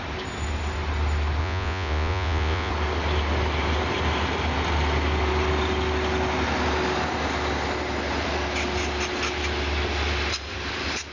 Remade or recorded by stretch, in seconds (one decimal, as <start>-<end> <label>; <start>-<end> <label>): 0.0-1.4 recorded; 1.4-2.7 remade; 2.7-11.1 recorded